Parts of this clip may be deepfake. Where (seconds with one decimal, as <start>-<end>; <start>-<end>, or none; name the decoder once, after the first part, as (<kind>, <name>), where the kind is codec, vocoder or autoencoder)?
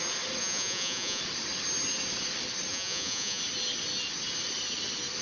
0.4-1.2 (vocoder, Vocos); 2.7-3.4